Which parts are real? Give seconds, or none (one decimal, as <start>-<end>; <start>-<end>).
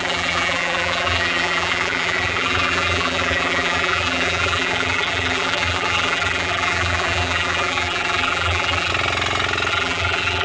8.9-9.7